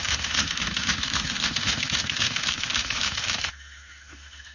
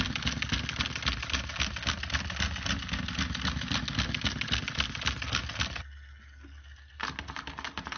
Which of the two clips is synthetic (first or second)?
first